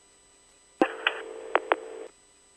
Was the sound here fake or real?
real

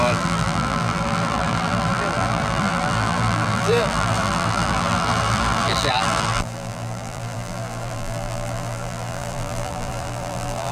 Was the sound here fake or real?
fake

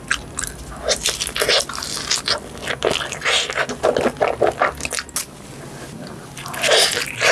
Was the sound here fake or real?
real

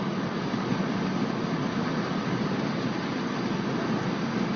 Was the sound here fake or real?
real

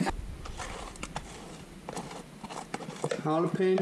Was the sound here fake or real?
real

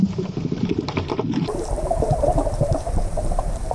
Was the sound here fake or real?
fake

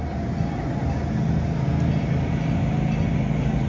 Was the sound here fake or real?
real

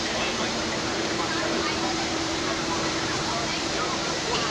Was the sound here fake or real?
fake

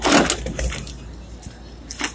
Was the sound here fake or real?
real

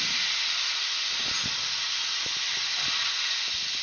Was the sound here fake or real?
real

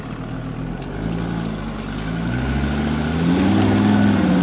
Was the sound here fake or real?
real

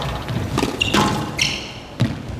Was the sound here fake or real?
real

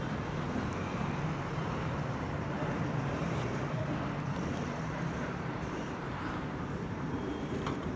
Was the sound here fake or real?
fake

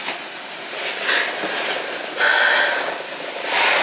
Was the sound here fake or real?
real